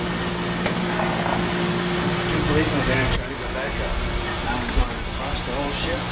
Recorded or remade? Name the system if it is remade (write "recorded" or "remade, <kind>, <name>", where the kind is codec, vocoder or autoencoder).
recorded